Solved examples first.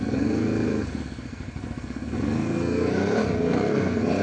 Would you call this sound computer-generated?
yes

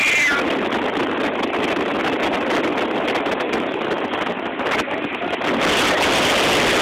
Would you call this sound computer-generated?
no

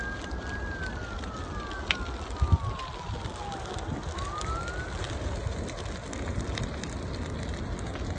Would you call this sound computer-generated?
no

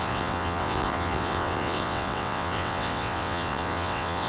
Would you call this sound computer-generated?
yes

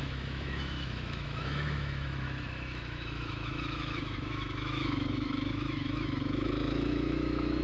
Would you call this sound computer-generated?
yes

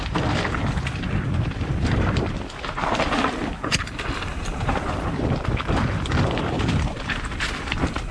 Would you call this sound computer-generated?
yes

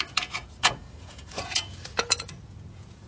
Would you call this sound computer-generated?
yes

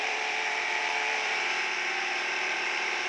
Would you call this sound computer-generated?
yes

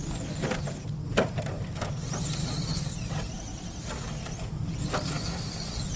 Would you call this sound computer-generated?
no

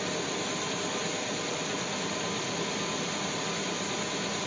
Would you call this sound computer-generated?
no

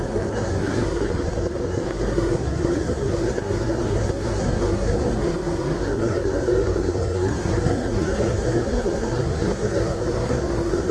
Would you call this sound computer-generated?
yes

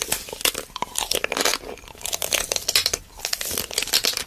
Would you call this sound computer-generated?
no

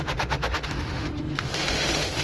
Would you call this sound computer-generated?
yes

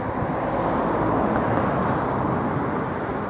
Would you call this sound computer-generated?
no